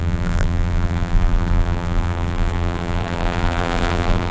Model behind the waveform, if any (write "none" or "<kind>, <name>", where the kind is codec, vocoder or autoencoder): vocoder, BigVGAN v2